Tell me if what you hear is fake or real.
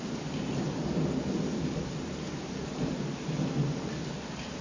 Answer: real